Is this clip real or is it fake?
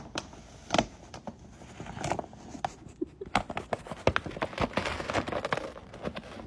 real